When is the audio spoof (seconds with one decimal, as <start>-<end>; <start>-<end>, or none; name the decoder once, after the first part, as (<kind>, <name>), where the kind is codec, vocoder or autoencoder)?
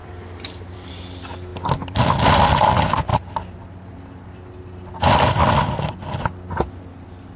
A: 0.0-0.9 (vocoder, BigVGAN v2); 1.5-2.7